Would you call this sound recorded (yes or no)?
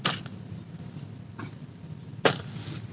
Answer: yes